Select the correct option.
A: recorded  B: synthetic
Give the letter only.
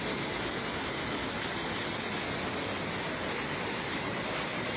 A